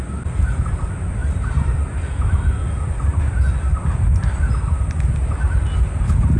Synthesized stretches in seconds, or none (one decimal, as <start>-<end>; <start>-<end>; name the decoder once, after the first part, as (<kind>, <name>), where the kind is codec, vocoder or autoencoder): none